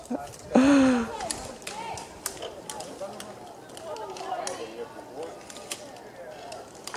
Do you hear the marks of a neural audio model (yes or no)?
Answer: no